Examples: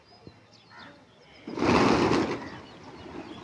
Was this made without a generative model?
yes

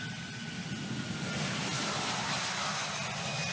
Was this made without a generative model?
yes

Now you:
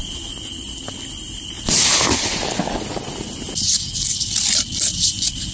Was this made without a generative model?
yes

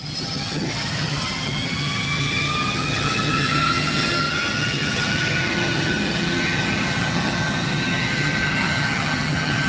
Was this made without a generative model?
no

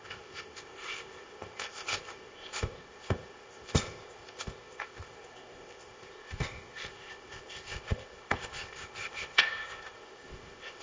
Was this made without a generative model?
no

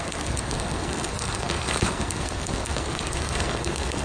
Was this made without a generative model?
no